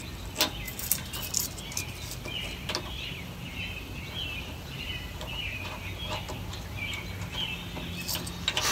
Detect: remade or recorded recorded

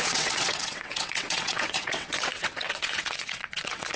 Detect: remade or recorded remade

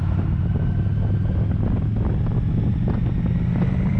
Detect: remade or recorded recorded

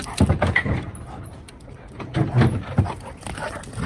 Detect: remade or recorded recorded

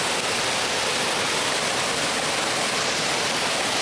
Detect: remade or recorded recorded